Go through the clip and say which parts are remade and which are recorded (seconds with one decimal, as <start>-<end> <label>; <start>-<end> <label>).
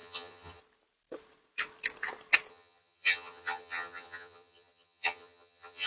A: 0.0-0.6 remade; 0.6-2.5 recorded; 2.5-5.9 remade